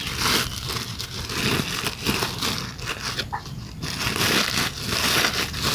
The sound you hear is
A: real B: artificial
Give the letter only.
A